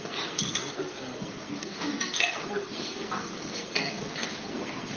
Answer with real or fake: fake